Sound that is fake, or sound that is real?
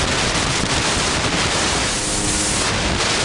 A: real